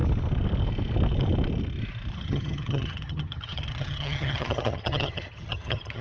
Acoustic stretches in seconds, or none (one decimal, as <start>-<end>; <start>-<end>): 0.0-2.1

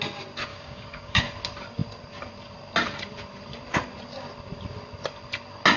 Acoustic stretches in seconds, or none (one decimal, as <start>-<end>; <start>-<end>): 0.0-0.5; 1.2-5.8

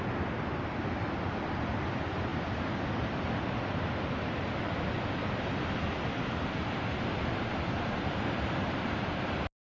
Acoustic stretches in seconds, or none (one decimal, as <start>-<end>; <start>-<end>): 0.0-9.7